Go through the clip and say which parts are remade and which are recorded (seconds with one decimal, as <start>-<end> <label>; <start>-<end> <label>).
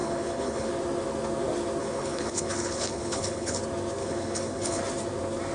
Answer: 0.0-0.7 remade; 0.7-1.8 recorded; 1.8-3.6 remade; 3.6-4.0 recorded; 4.0-4.8 remade; 4.8-5.5 recorded